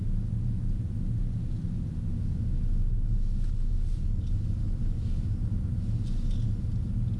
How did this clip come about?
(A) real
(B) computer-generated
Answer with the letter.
A